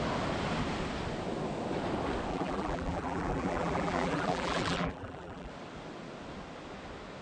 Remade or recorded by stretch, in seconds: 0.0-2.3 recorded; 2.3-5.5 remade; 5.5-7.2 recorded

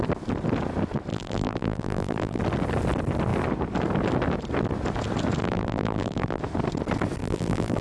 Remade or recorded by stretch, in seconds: 0.0-1.1 recorded; 1.1-2.4 remade; 2.4-5.4 recorded; 5.4-6.4 remade; 6.4-7.2 recorded; 7.2-7.8 remade

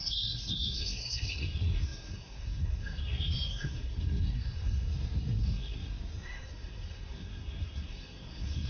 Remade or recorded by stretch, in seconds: 0.0-8.7 remade

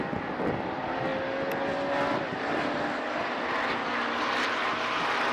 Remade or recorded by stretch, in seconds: 0.0-5.3 recorded

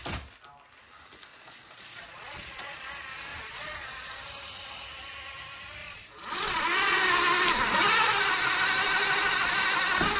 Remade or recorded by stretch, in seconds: 0.0-1.3 recorded; 1.3-2.9 remade; 2.9-3.3 recorded; 3.3-4.2 remade; 4.2-5.8 recorded; 5.8-6.6 remade; 6.6-10.2 recorded

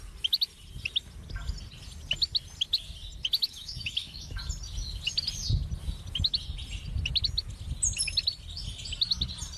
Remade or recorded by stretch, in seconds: 0.0-3.4 recorded; 3.4-4.4 remade; 4.4-9.6 recorded

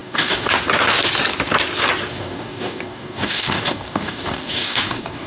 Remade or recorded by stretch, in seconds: 0.0-0.5 remade; 0.5-2.1 recorded; 2.1-5.3 remade

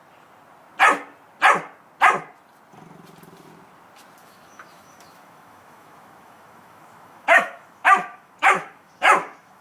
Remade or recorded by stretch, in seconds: 0.0-4.2 recorded; 4.2-9.6 remade